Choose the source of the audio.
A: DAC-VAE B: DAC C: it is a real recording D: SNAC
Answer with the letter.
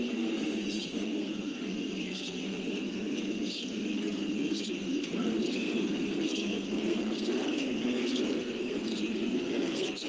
D